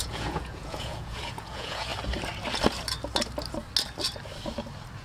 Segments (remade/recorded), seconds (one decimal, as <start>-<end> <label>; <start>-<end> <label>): 0.0-1.9 remade; 1.9-5.0 recorded